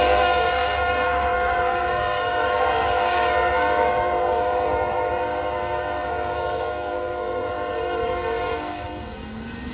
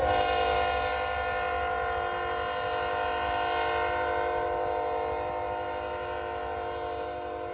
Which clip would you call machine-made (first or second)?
first